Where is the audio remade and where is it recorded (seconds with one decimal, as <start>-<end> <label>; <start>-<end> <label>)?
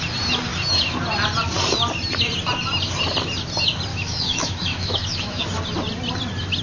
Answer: 0.0-3.9 recorded; 3.9-5.5 remade; 5.5-6.6 recorded